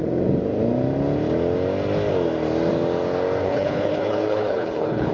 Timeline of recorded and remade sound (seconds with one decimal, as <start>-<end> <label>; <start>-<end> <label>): 0.0-3.4 recorded; 3.4-5.1 remade